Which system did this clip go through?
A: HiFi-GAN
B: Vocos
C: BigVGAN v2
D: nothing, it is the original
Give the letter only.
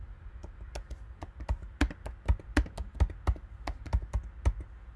D